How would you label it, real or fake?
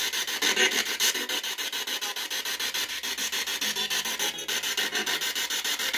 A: real